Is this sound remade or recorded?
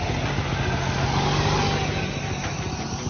recorded